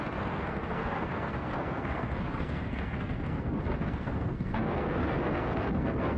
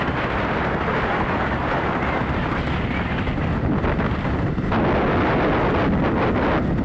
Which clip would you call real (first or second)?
second